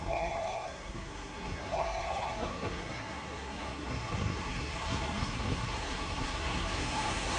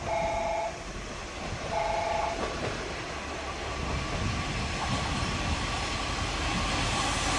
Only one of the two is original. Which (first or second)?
second